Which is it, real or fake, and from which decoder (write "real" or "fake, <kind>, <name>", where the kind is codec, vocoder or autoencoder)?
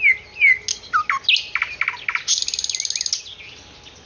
real